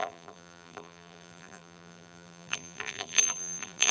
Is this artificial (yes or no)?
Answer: yes